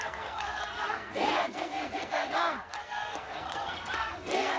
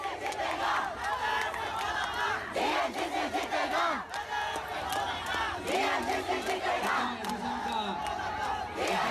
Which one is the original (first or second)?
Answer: second